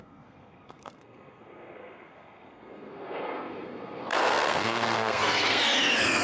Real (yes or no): no